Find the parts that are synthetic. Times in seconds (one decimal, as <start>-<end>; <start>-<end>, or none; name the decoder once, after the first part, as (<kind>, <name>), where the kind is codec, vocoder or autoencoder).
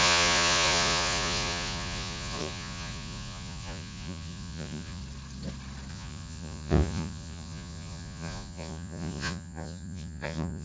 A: 0.0-5.0 (vocoder, Vocos); 5.9-10.6